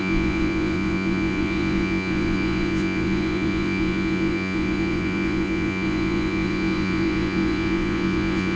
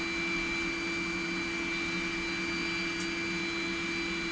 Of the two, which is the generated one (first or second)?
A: first